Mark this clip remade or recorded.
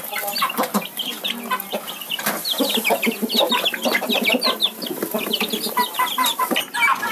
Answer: recorded